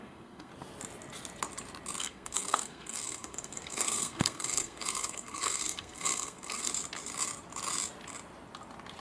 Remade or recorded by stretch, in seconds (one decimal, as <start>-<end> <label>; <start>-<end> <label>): 0.0-0.5 remade; 0.5-2.0 recorded; 2.0-6.7 remade; 6.7-9.0 recorded

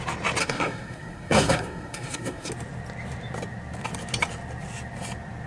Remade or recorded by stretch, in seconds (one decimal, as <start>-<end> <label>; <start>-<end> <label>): 0.0-0.4 recorded; 0.4-2.5 remade; 2.5-5.5 recorded

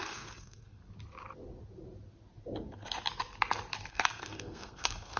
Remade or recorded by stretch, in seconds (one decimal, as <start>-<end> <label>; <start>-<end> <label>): 0.0-0.8 remade; 0.8-3.9 recorded; 3.9-5.2 remade

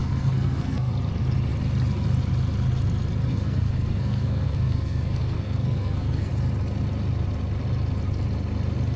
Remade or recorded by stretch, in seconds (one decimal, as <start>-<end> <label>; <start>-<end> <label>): 0.0-0.9 remade; 0.9-3.3 recorded; 3.3-6.3 remade; 6.3-9.0 recorded

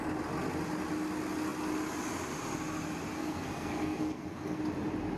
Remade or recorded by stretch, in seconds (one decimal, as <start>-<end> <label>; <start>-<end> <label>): 0.0-3.2 recorded; 3.2-4.6 remade; 4.6-5.2 recorded